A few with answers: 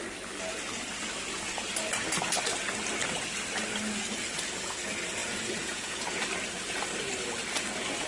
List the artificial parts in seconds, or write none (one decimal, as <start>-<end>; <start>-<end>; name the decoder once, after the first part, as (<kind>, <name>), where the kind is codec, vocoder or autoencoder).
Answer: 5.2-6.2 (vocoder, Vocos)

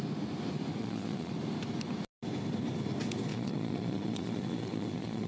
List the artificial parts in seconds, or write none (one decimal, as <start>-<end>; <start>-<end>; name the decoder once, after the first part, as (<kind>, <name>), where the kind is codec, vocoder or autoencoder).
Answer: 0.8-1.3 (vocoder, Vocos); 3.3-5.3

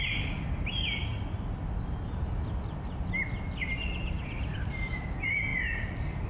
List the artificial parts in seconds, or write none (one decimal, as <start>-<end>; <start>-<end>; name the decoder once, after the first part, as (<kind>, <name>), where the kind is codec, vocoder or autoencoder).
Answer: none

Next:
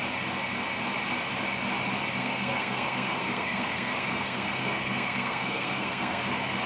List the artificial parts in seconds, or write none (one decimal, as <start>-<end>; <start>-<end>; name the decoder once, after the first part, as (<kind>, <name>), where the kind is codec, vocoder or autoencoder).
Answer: 2.2-6.2 (codec, SNAC)